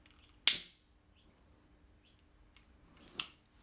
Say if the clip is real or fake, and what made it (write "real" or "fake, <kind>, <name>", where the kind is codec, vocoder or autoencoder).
real